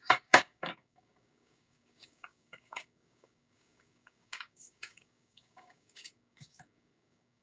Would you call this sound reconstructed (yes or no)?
yes